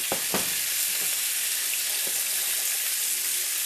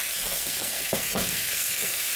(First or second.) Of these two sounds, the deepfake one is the second